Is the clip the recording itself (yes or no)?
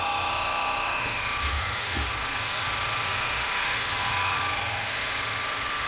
no